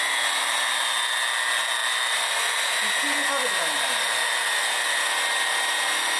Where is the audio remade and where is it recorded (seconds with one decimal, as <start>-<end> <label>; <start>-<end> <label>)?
0.0-6.2 recorded